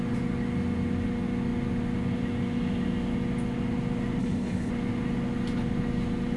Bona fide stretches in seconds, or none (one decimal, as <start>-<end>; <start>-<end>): 0.0-4.2; 4.7-6.4